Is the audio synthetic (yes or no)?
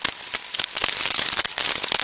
no